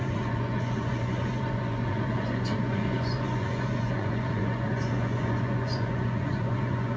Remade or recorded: remade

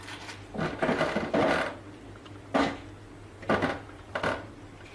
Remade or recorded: recorded